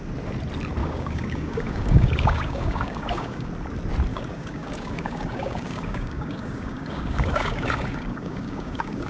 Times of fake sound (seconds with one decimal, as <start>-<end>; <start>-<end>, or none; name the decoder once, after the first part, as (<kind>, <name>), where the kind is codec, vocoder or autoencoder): 0.8-3.5 (codec, DAC); 4.1-9.1